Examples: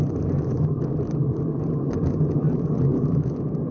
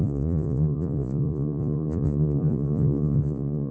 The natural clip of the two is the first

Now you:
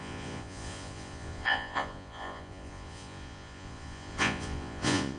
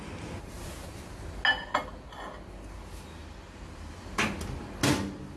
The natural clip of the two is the second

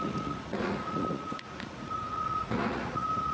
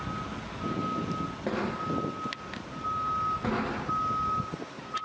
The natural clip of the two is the second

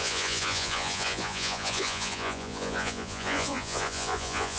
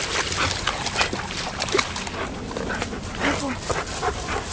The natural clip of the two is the second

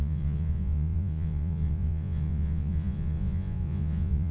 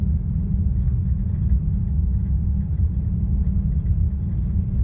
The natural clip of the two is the second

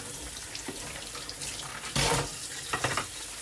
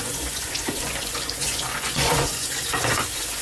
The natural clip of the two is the first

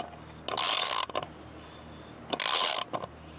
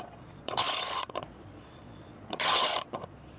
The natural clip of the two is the first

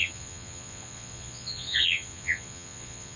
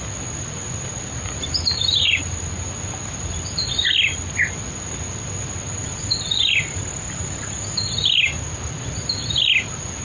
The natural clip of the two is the second